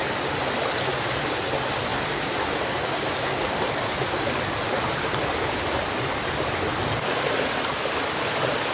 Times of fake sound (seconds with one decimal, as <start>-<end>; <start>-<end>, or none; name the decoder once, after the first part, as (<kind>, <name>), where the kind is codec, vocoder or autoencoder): none